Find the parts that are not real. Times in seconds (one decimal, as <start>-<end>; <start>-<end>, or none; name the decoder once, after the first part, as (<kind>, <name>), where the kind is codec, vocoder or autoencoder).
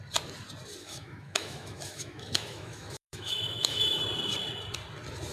0.8-4.0 (autoencoder, DAC-VAE)